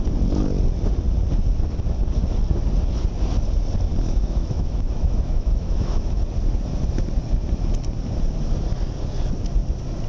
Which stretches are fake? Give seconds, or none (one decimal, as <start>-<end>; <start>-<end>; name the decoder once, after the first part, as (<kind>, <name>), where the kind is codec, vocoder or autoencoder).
3.9-6.2 (autoencoder, DAC-VAE)